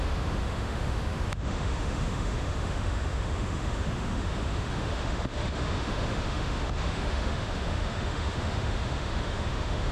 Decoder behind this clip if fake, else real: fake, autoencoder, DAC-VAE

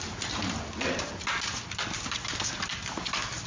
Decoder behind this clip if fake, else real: real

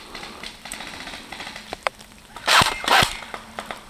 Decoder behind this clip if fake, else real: fake, vocoder, BigVGAN v2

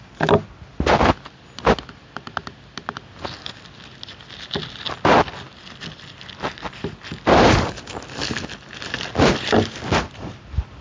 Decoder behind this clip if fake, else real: real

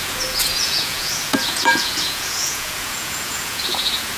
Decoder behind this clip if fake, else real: fake, vocoder, Vocos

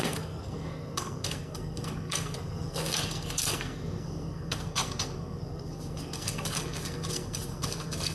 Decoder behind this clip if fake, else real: fake, codec, SNAC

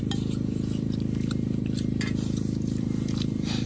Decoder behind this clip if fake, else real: fake, vocoder, BigVGAN v2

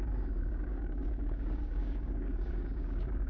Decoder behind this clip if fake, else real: fake, codec, DAC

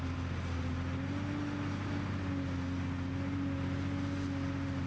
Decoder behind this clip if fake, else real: real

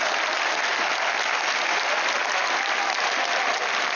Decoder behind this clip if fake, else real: real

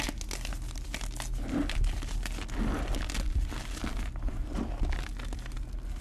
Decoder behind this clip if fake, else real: real